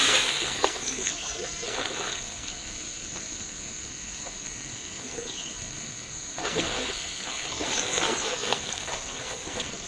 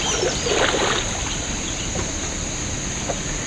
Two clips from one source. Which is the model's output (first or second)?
first